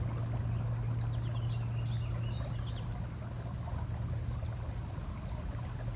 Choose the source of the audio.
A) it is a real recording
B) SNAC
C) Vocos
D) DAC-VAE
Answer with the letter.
A